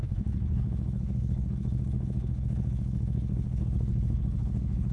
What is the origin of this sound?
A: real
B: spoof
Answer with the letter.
B